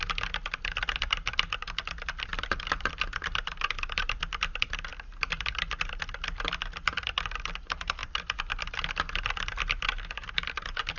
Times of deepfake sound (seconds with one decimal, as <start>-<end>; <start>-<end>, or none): 2.3-2.9; 8.0-8.6